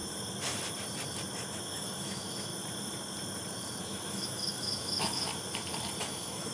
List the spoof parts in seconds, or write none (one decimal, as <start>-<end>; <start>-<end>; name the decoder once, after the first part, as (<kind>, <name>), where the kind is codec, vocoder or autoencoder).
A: 1.5-2.5 (autoencoder, DAC-VAE); 3.8-5.3; 6.0-6.5